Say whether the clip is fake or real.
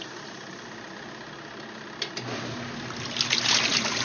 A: real